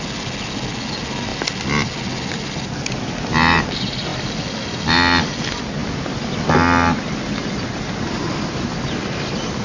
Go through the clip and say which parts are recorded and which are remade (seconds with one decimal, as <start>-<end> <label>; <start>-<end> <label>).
0.0-9.6 recorded